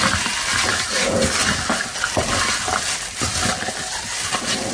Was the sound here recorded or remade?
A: recorded